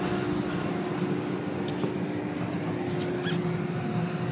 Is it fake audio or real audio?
real